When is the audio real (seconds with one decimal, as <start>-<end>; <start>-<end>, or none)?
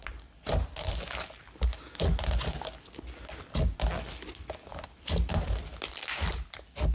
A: 0.0-4.7; 5.7-6.9